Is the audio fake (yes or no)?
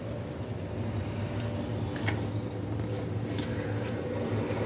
no